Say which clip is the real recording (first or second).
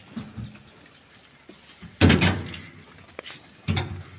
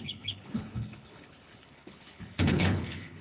first